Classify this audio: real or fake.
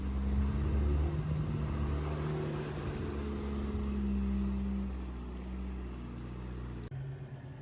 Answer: real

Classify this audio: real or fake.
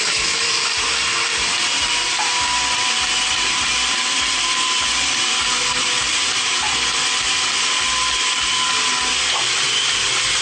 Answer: fake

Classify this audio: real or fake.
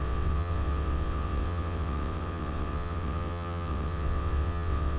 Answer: fake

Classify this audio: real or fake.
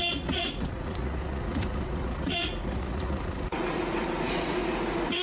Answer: fake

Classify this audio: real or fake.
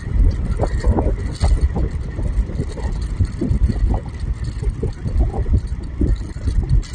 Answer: real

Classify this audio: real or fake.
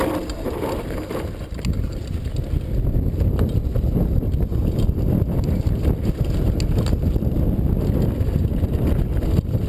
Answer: real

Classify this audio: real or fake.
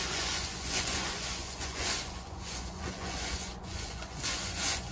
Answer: fake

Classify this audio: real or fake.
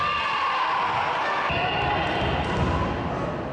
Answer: real